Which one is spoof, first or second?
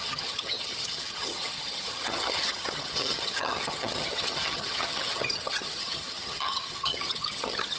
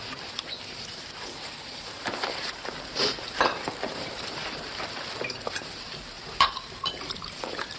first